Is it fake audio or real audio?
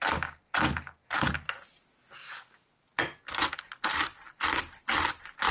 real